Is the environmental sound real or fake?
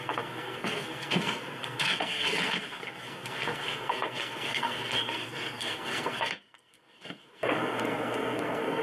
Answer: fake